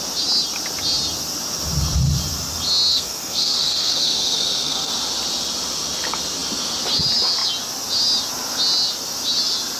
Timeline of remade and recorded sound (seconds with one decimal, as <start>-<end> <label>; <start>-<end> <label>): 0.0-2.9 recorded; 2.9-4.9 remade; 4.9-9.8 recorded